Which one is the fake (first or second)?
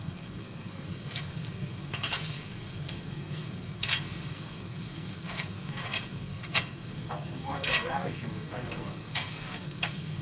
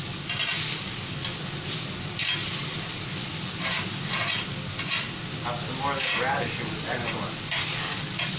first